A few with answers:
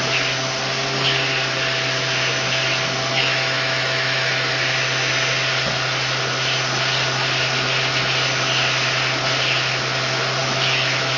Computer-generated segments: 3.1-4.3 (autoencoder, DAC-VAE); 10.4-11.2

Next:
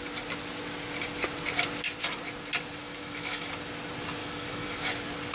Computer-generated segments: 2.8-3.5 (autoencoder, DAC-VAE); 4.2-4.8

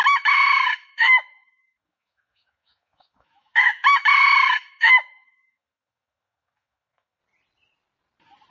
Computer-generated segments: 0.0-7.2 (autoencoder, DAC-VAE)

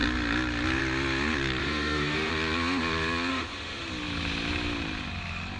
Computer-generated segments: 1.6-2.3 (autoencoder, DAC-VAE); 3.3-3.9

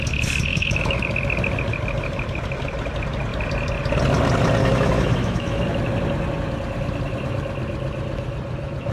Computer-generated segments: 0.5-1.0 (autoencoder, DAC-VAE); 4.6-5.6